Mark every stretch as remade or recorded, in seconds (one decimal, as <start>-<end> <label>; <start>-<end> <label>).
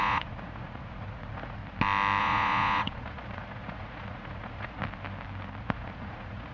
0.0-1.6 remade; 1.6-2.2 recorded; 2.2-4.8 remade; 4.8-5.6 recorded; 5.6-6.5 remade